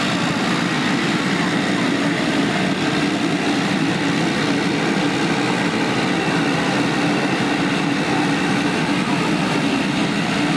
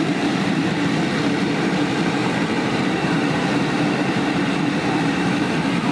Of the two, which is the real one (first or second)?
first